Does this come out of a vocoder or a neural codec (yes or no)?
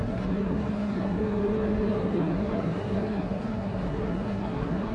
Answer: yes